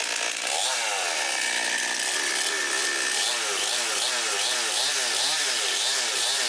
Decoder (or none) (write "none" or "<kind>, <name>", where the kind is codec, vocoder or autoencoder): none